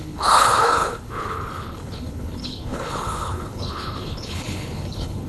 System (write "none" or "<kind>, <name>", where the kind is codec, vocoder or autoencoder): codec, HILCodec